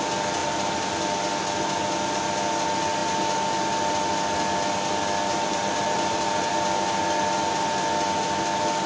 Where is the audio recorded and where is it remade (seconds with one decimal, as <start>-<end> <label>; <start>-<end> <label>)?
0.0-0.4 recorded; 0.4-0.9 remade; 0.9-5.3 recorded; 5.3-6.5 remade; 6.5-8.9 recorded